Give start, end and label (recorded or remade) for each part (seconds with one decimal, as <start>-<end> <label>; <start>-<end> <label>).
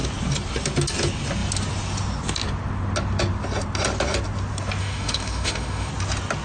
0.0-4.8 recorded; 4.8-5.9 remade; 5.9-6.4 recorded